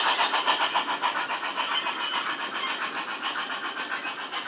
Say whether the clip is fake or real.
real